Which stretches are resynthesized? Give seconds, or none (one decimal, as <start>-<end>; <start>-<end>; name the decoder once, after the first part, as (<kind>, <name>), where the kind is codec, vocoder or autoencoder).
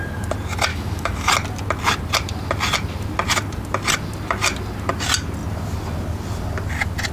0.7-1.3 (autoencoder, DAC-VAE)